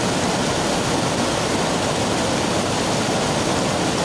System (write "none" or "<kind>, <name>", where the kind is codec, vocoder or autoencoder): none